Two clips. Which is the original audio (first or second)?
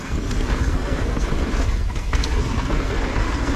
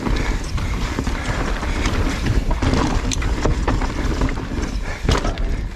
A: second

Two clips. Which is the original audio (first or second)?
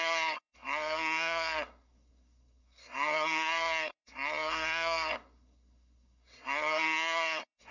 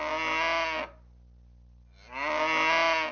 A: second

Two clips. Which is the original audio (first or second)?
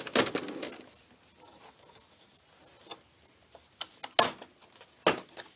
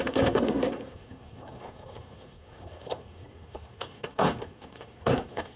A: first